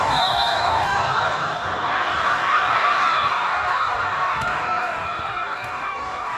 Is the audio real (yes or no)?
no